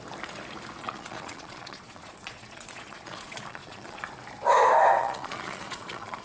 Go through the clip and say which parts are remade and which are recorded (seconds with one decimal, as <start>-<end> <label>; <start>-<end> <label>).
0.0-0.8 recorded; 0.8-4.1 remade; 4.1-5.0 recorded; 5.0-6.2 remade